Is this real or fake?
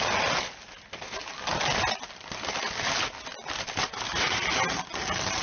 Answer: real